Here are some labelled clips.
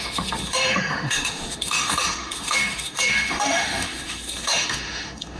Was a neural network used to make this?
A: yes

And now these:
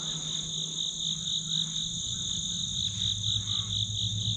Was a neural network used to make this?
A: no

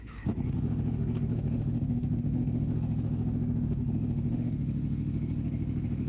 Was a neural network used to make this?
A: yes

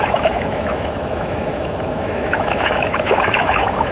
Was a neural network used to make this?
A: yes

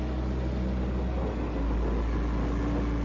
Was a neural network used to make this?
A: no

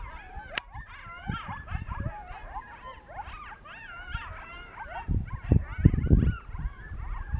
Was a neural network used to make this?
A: no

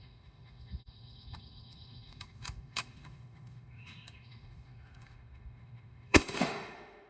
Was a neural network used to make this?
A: yes